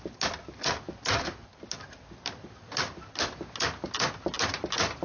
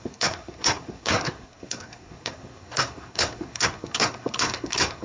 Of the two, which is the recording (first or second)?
first